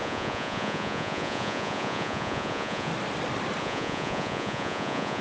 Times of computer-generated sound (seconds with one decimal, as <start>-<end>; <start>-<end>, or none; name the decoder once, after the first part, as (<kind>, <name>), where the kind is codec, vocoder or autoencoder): 0.0-2.9 (vocoder, Vocos); 3.6-5.2